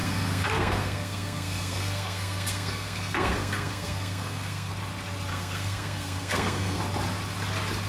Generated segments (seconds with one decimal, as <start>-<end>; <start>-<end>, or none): 0.0-4.7; 5.3-6.8